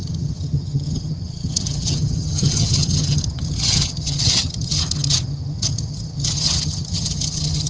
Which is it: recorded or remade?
remade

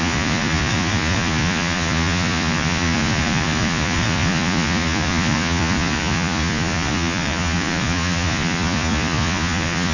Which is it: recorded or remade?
remade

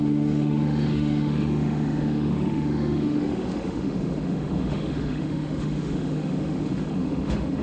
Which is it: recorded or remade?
remade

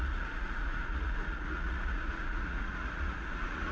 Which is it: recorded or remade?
remade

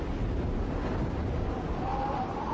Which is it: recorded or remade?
recorded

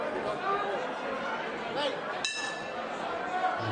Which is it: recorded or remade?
recorded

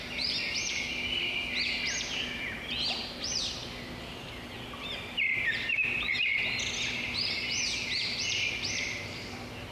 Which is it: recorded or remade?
remade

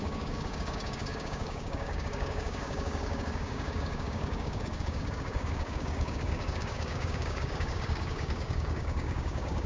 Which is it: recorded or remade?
remade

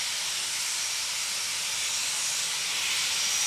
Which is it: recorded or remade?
recorded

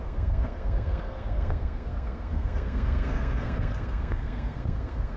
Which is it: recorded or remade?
remade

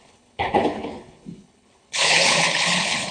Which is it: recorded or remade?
remade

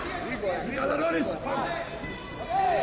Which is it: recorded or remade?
recorded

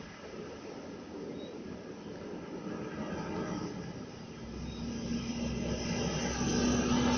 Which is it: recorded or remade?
recorded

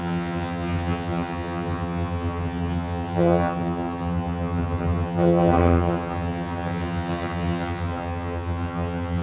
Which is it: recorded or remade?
remade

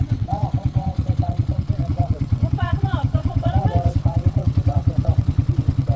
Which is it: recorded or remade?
remade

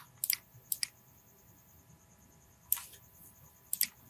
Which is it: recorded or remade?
recorded